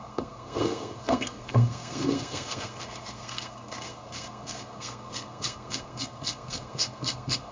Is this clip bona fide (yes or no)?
no